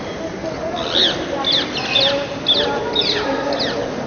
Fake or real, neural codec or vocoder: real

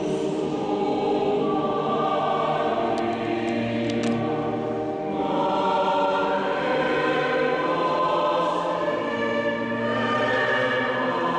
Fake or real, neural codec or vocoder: real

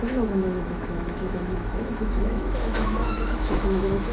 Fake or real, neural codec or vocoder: fake, autoencoder, DAC-VAE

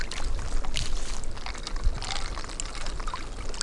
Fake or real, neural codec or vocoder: real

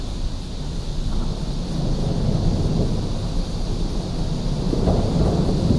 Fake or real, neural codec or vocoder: real